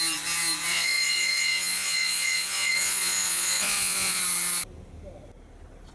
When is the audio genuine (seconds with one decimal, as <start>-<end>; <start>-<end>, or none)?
0.0-0.7; 4.2-5.9